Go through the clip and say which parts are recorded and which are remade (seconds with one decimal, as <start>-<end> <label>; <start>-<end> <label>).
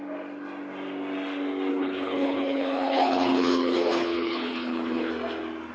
0.0-1.7 recorded; 1.7-5.1 remade; 5.1-5.7 recorded